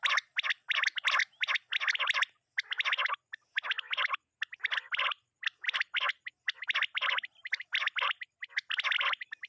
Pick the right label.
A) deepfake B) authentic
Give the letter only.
B